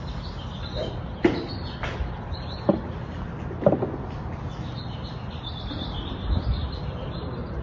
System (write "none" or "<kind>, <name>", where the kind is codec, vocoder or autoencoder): none